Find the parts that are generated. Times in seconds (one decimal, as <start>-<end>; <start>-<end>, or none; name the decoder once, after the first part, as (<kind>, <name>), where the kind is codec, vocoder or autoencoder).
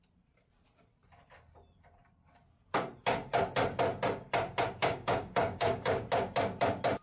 4.8-5.9 (codec, DAC)